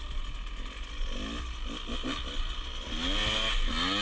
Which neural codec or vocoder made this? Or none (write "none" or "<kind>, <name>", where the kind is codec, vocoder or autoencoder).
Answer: none